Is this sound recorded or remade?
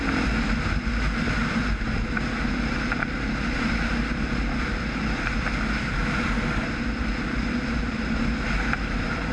recorded